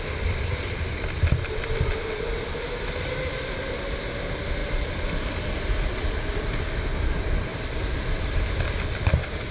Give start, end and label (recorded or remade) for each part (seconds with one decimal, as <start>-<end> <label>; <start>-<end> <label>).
0.0-4.6 recorded; 4.6-5.2 remade; 5.2-7.5 recorded; 7.5-9.5 remade